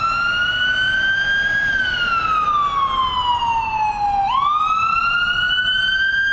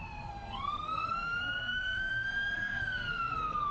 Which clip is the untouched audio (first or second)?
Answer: first